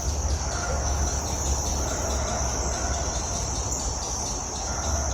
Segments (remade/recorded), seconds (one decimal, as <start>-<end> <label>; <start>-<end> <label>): 0.0-0.6 recorded; 0.6-1.2 remade; 1.2-5.1 recorded